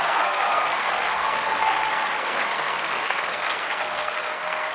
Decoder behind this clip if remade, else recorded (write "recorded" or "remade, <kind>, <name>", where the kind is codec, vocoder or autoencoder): remade, codec, SNAC